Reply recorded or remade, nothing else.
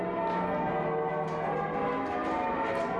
recorded